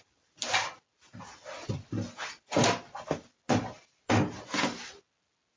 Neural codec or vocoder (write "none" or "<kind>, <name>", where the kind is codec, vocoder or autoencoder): none